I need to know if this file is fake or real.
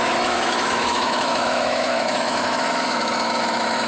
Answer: fake